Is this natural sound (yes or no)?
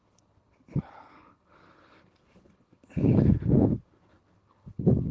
no